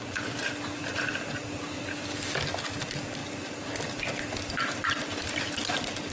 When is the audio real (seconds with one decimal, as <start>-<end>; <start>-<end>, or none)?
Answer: 0.0-6.1